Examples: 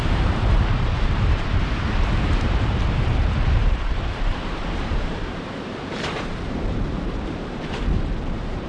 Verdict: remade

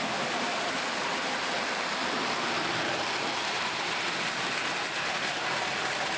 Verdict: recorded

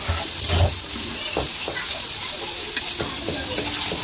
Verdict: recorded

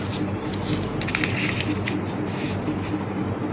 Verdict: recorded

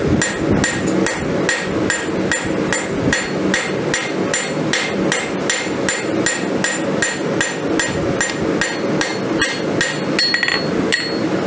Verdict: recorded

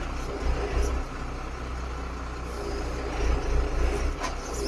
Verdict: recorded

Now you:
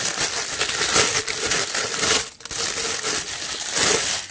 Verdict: recorded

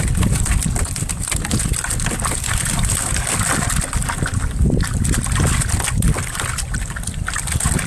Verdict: recorded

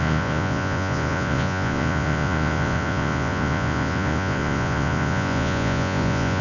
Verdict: remade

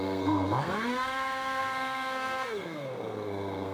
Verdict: remade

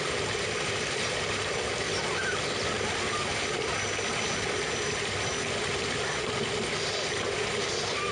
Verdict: recorded